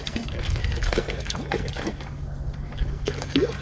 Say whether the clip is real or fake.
fake